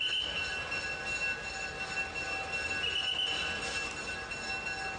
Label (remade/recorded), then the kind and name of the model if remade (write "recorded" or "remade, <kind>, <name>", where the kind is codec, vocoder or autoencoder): recorded